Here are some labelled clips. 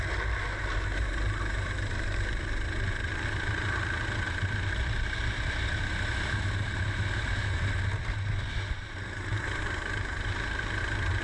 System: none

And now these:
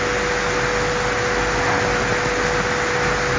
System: none